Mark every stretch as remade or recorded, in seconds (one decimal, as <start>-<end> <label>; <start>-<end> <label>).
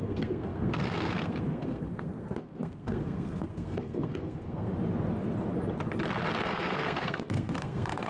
0.0-4.7 remade; 4.7-6.4 recorded; 6.4-8.1 remade